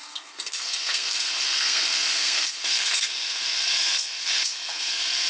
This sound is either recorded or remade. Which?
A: remade